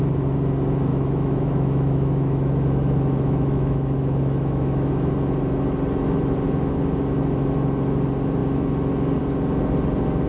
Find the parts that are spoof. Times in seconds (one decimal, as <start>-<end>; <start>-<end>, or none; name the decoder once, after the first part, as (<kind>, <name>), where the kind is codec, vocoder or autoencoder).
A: 0.9-4.9 (autoencoder, DAC-VAE)